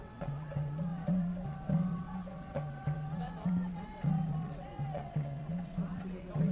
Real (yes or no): no